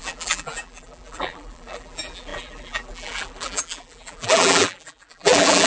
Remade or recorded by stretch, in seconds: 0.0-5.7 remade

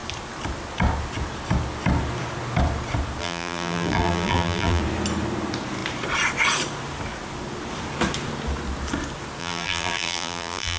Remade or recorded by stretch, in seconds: 0.0-3.2 recorded; 3.2-4.8 remade; 4.8-9.4 recorded; 9.4-10.8 remade

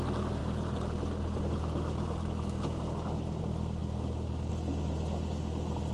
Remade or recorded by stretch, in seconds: 0.0-0.4 recorded; 0.4-3.4 remade; 3.4-5.9 recorded